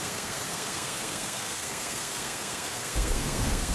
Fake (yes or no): yes